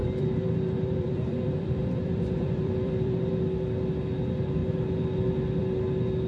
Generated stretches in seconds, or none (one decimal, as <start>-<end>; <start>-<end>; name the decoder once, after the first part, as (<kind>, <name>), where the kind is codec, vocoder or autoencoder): 0.0-3.3 (vocoder, BigVGAN v2)